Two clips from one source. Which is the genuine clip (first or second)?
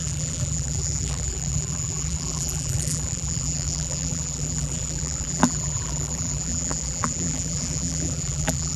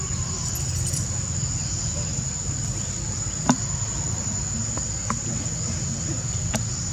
second